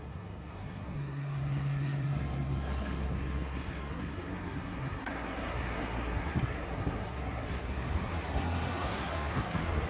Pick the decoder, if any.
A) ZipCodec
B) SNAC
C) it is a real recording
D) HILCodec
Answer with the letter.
B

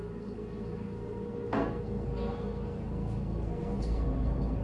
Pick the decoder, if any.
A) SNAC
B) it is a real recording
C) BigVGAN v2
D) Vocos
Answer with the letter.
A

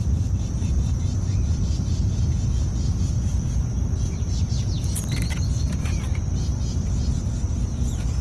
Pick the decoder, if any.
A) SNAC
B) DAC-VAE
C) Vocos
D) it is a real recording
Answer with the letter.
D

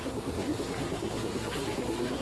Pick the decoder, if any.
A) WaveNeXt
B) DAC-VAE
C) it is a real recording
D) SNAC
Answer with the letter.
D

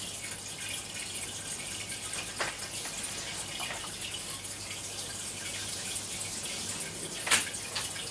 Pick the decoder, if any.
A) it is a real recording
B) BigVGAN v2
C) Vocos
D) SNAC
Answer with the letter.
A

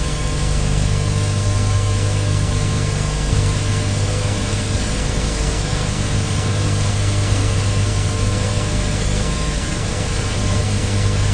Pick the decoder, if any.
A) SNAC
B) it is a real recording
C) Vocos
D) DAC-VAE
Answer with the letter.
A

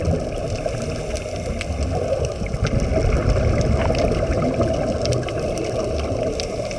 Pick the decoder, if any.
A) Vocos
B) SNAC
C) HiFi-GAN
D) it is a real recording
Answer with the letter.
D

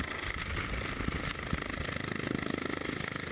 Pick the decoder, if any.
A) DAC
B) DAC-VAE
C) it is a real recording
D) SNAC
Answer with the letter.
C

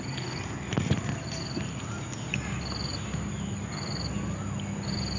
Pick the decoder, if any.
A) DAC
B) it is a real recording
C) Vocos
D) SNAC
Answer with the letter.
B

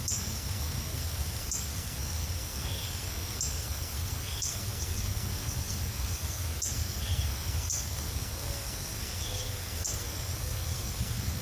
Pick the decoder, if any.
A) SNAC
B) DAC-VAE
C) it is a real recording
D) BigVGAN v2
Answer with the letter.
A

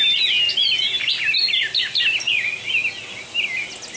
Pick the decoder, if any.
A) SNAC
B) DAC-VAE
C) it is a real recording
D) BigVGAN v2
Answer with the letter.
C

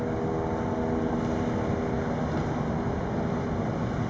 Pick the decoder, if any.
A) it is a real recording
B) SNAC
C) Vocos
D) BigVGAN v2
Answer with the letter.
A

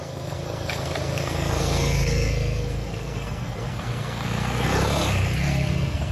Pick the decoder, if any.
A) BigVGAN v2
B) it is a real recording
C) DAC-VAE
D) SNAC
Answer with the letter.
D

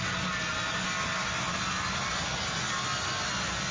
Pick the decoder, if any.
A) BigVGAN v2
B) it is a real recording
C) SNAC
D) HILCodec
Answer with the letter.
B